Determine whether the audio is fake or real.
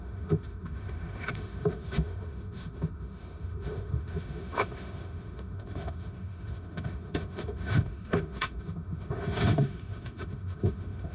fake